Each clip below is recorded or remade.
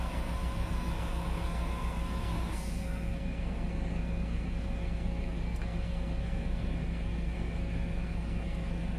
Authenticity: remade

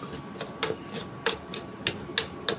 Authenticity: recorded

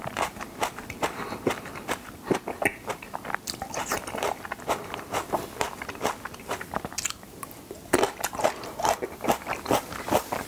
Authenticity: recorded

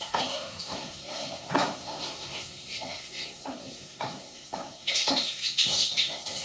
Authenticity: remade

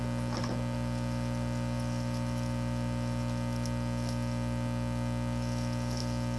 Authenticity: recorded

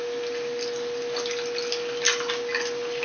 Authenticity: recorded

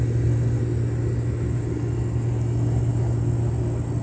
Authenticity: recorded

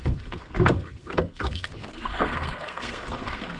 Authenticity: remade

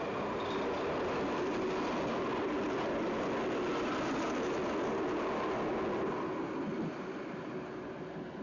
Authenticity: recorded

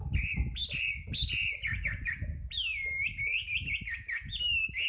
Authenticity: recorded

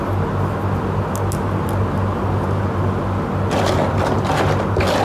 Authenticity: recorded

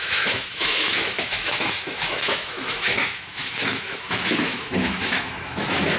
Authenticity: remade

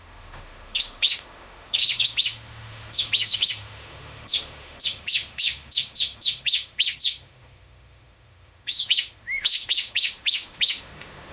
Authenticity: remade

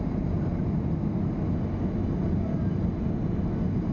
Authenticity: recorded